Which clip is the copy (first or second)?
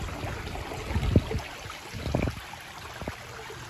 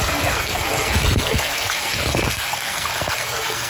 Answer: second